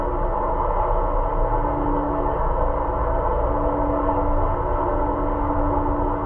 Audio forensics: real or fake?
real